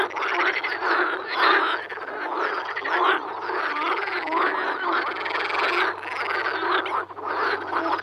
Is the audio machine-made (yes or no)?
no